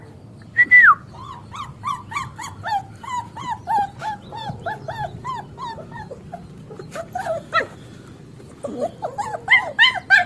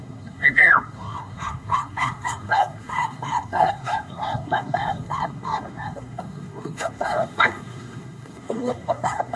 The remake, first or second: second